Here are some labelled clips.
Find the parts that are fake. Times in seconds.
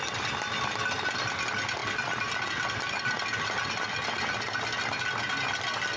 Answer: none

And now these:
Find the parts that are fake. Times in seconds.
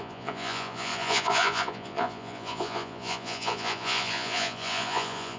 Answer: 0.0-5.4 (vocoder, Vocos)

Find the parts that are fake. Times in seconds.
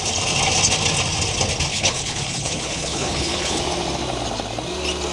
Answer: 1.7-3.6 (codec, HILCodec)